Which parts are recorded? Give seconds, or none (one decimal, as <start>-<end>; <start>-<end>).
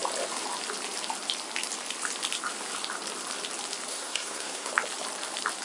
0.0-3.9; 4.7-5.6